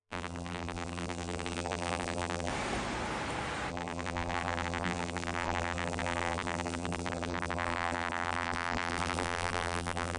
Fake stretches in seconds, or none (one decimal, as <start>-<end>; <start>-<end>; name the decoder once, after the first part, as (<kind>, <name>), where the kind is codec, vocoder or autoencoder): 0.0-2.5 (vocoder, BigVGAN v2); 3.7-10.2